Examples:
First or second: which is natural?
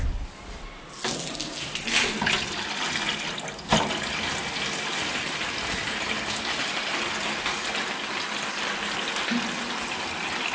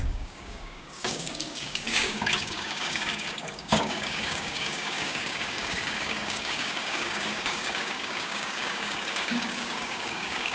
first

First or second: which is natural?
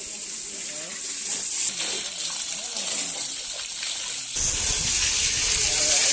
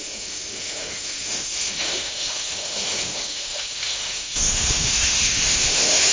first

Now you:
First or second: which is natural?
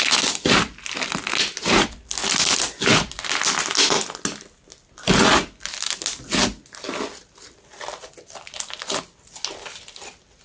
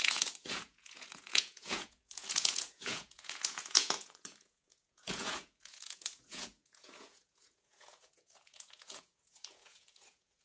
first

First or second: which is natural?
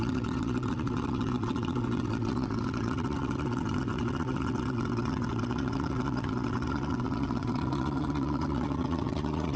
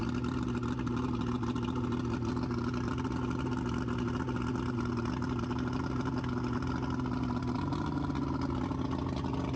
second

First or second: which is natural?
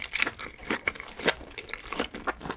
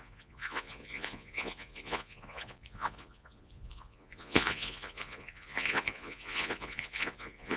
first